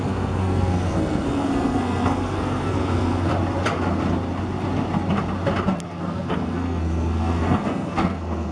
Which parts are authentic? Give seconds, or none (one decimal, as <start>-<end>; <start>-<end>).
3.3-5.8